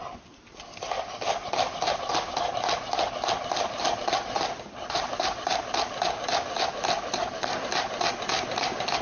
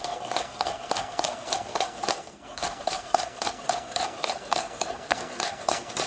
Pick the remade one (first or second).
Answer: second